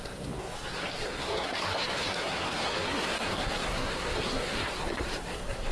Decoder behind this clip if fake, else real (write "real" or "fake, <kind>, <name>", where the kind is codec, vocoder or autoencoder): fake, codec, SNAC